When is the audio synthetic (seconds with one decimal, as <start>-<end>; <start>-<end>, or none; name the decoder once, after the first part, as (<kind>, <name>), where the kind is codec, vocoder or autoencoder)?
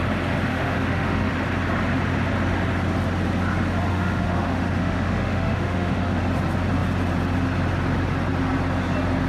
0.5-1.3 (autoencoder, DAC-VAE); 3.9-6.2